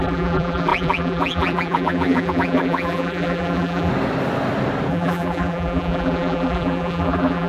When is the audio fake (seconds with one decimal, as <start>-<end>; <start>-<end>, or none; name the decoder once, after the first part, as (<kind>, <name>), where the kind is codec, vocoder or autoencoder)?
0.0-3.9 (vocoder, BigVGAN v2); 4.9-7.5